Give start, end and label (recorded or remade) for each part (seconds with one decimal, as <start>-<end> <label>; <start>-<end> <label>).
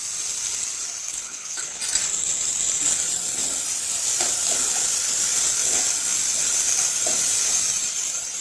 0.0-1.1 recorded; 1.1-1.8 remade; 1.8-8.4 recorded